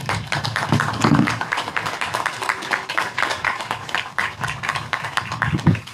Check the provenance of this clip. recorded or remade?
remade